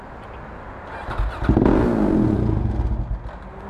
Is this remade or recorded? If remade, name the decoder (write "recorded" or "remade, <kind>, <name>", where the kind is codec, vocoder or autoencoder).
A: recorded